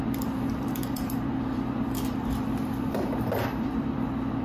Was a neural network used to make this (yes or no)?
yes